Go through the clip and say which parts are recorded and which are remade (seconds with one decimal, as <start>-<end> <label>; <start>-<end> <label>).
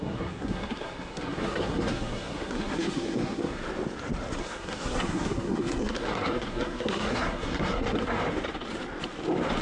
0.0-3.6 remade; 3.6-4.4 recorded; 4.4-8.2 remade; 8.2-9.6 recorded